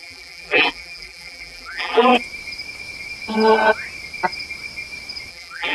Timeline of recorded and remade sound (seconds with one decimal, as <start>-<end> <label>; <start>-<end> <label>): 0.0-2.1 remade; 2.1-5.3 recorded; 5.3-5.7 remade